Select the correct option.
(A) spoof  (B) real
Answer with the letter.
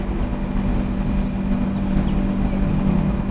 B